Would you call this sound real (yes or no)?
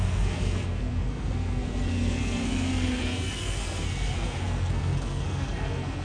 no